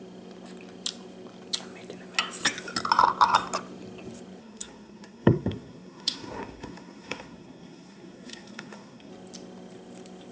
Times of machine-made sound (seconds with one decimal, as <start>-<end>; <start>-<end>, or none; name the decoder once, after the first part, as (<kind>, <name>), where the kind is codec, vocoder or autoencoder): 4.4-9.1 (codec, SNAC)